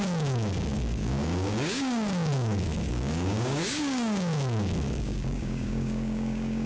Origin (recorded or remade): remade